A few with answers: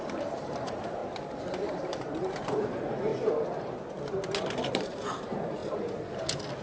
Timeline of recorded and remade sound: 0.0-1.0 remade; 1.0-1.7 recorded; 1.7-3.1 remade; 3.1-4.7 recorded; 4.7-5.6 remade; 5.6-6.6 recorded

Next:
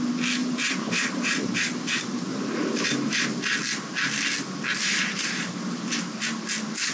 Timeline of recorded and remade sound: 0.0-0.4 recorded; 0.4-1.9 remade; 1.9-2.3 recorded; 2.3-3.4 remade; 3.4-4.7 recorded; 4.7-5.4 remade; 5.4-6.9 recorded